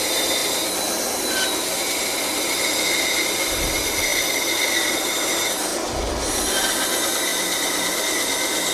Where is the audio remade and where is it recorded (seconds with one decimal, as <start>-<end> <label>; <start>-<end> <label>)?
0.0-4.1 recorded; 4.1-5.1 remade; 5.1-8.7 recorded